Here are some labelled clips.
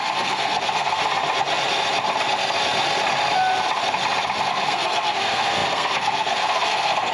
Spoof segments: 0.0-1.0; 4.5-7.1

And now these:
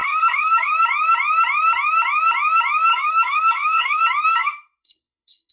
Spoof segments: 0.0-0.7; 2.9-4.0; 4.4-5.5

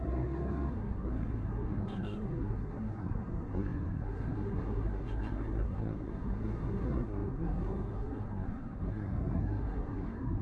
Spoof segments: 0.0-10.4

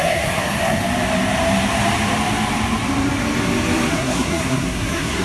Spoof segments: 0.0-0.8; 3.9-5.2